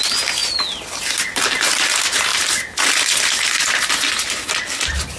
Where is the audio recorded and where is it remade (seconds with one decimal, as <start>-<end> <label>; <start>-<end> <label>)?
0.0-5.2 recorded